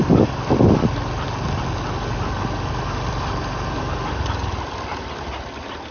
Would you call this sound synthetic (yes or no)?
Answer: no